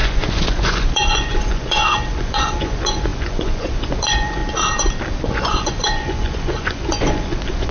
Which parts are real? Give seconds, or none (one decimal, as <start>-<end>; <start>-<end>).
4.4-5.3